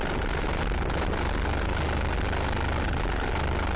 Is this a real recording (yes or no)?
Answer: yes